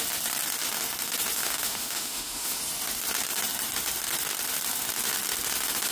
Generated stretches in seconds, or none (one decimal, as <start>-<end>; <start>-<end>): 1.4-2.6